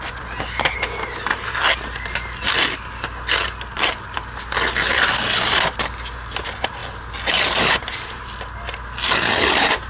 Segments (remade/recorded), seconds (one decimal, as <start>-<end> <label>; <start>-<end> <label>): 0.0-9.9 recorded